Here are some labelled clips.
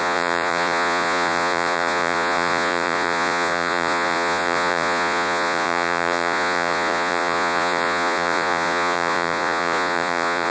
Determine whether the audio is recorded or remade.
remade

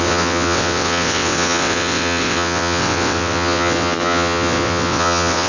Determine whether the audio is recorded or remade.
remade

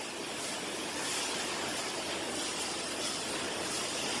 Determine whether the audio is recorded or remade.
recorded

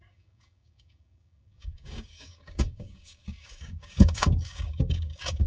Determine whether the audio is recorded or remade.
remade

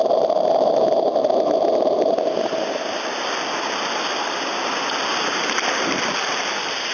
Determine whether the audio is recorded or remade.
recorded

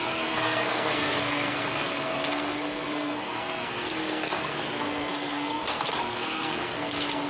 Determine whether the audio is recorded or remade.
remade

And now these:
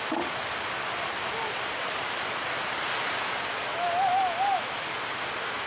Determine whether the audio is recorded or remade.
recorded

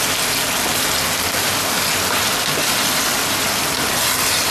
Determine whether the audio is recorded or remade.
recorded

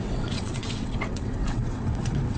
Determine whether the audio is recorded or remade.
remade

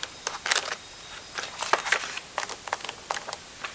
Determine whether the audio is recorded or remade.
recorded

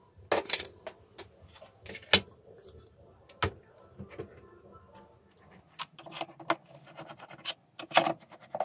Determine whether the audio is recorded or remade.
recorded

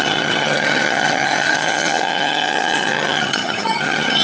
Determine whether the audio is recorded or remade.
remade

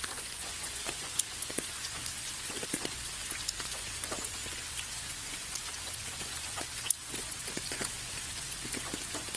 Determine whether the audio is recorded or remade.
remade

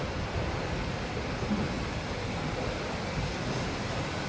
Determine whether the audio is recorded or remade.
recorded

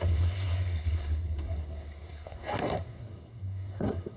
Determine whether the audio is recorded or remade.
remade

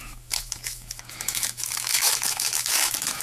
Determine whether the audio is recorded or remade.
remade